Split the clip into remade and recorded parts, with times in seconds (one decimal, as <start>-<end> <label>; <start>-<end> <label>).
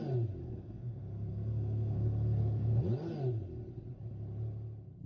0.0-0.4 recorded; 0.4-2.8 remade; 2.8-5.1 recorded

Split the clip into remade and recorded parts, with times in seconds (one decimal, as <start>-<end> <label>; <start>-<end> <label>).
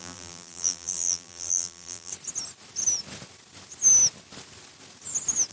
0.0-2.1 remade; 2.1-5.5 recorded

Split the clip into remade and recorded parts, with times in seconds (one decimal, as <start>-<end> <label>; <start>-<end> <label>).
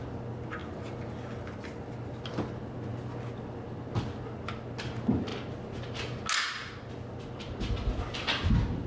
0.0-8.9 recorded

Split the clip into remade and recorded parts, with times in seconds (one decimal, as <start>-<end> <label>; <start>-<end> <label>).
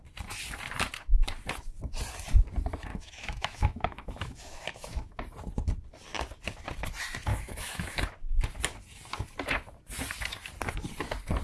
0.0-2.9 recorded; 2.9-5.2 remade; 5.2-7.3 recorded; 7.3-8.0 remade; 8.0-11.4 recorded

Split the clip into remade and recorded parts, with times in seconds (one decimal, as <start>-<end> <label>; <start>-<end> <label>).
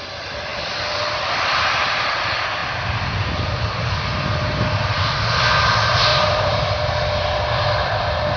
0.0-0.5 recorded; 0.5-2.1 remade; 2.1-6.1 recorded; 6.1-6.7 remade; 6.7-8.4 recorded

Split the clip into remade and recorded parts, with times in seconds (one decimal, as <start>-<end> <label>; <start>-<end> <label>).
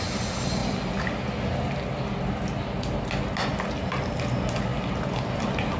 0.0-5.8 recorded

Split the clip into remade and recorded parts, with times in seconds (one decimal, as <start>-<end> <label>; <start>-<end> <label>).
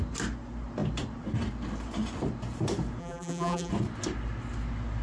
0.0-3.0 recorded; 3.0-3.7 remade; 3.7-5.0 recorded